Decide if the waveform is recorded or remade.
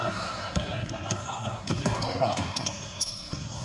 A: remade